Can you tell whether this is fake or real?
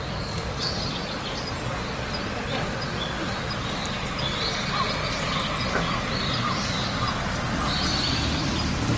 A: real